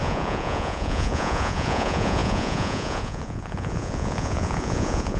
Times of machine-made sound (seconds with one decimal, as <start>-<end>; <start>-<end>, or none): 0.0-5.2